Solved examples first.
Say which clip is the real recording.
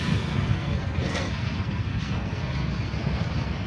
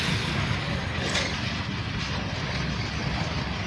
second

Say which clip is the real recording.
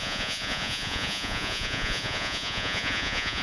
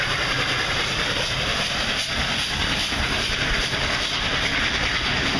second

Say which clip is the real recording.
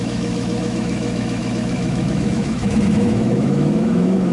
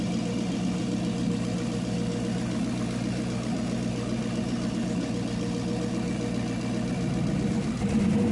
second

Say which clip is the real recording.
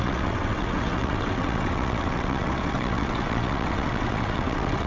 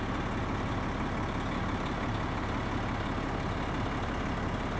second